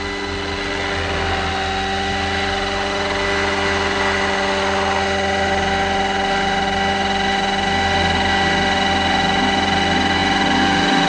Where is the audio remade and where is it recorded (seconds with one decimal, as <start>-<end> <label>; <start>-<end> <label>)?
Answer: 0.0-11.1 recorded